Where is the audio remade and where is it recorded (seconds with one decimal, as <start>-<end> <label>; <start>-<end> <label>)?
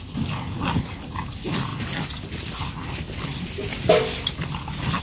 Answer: 0.0-5.0 recorded